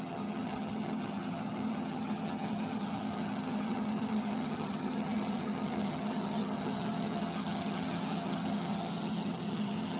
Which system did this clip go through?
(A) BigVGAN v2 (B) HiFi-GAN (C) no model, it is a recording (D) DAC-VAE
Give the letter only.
B